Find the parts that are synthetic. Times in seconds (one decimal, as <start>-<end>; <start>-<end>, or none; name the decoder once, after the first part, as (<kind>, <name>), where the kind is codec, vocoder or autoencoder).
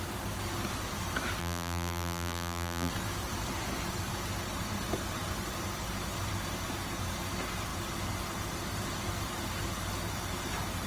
1.4-2.9 (vocoder, BigVGAN v2)